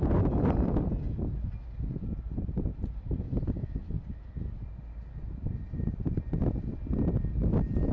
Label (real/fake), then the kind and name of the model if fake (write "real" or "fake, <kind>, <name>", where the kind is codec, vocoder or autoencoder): real